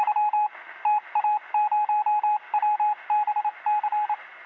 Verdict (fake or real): real